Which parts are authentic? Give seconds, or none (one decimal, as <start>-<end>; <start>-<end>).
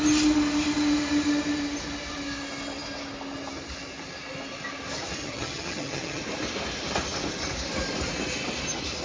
0.0-5.2; 6.2-9.0